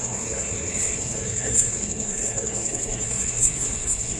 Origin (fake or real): fake